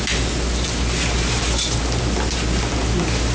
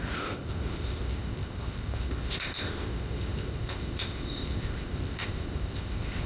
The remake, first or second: second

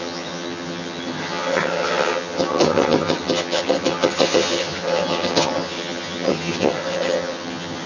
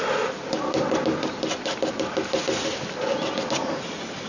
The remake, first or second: first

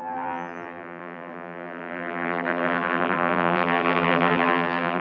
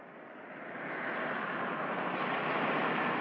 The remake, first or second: first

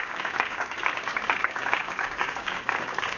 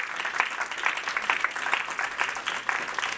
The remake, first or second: first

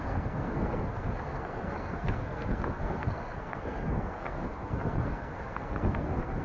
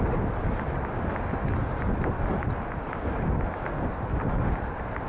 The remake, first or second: first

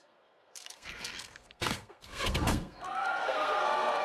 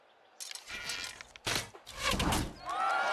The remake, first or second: first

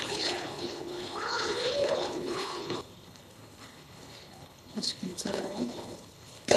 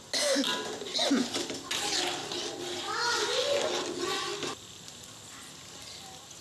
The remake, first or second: first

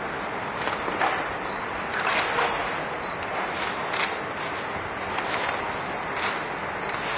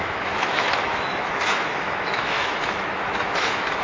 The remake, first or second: second